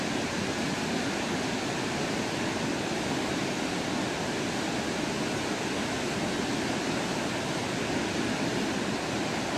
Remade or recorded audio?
recorded